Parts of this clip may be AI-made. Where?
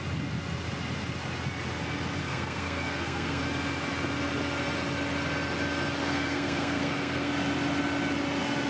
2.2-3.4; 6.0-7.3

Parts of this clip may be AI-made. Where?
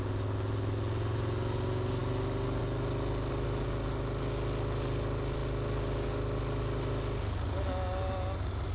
none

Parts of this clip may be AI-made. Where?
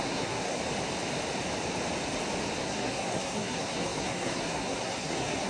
0.0-0.6; 2.6-5.5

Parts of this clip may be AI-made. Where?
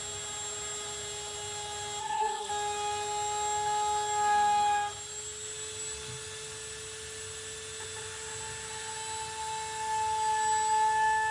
2.0-2.5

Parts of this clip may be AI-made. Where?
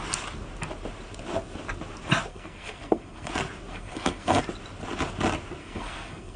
2.3-3.3; 3.7-4.4; 5.6-6.4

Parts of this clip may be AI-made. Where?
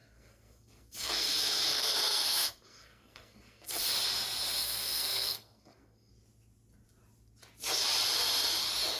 0.0-3.8; 4.6-6.1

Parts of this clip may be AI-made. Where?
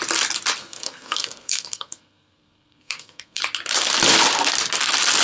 0.6-3.4